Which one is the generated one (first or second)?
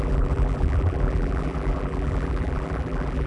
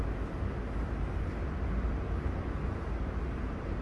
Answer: first